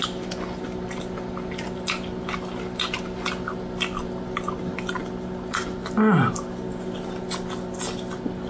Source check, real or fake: real